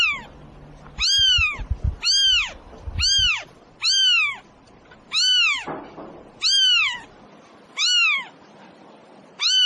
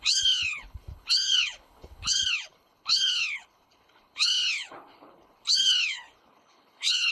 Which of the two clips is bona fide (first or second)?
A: first